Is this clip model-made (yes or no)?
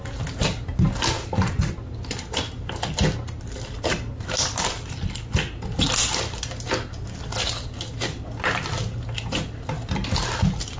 no